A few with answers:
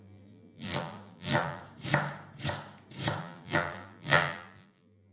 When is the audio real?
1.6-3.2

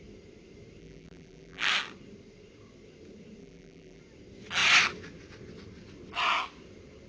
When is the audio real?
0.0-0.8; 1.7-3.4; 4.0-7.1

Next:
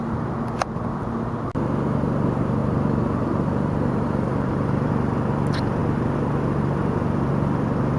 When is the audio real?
0.0-2.6; 4.9-8.0

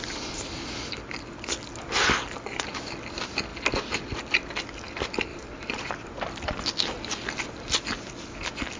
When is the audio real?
0.0-5.3; 6.2-8.8